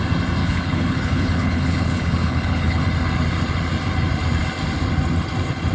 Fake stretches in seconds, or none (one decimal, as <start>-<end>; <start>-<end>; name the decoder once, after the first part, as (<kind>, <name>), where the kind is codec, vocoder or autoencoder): 0.4-2.8 (codec, HILCodec)